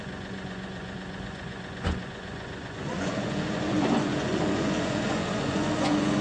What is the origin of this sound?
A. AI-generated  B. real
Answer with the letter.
A